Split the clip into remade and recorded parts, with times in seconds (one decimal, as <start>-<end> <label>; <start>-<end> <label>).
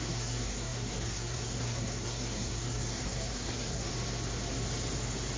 0.0-3.9 remade; 3.9-5.4 recorded